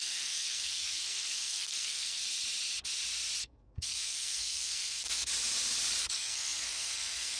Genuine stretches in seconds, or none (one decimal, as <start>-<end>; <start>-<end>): 2.2-3.4; 5.3-6.0